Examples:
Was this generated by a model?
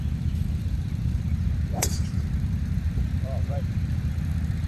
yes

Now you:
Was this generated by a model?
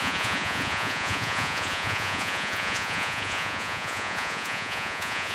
yes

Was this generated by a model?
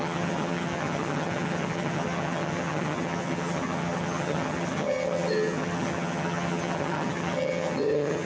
yes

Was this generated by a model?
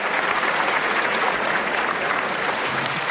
yes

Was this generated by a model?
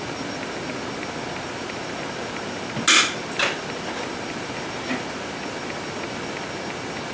no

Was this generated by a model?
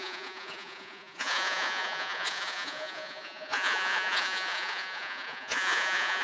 yes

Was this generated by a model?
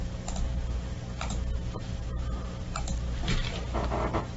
no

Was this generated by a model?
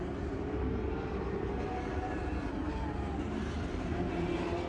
yes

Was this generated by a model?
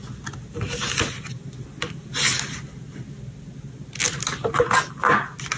no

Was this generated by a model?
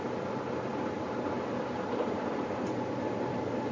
no